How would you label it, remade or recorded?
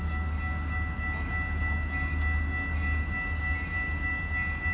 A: recorded